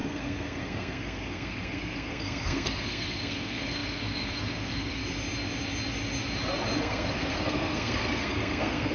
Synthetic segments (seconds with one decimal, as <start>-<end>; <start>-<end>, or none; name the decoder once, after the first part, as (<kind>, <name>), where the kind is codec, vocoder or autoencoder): 0.0-5.0 (codec, SNAC); 6.8-8.9